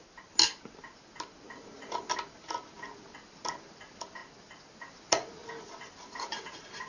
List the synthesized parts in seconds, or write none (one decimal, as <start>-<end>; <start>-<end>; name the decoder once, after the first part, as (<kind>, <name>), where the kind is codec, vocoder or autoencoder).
none